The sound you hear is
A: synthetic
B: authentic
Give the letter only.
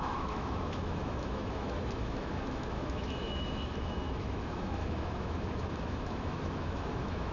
A